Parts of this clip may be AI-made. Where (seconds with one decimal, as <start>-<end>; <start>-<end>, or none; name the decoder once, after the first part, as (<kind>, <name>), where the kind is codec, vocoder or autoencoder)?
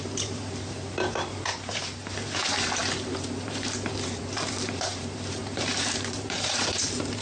0.0-7.2 (vocoder, BigVGAN v2)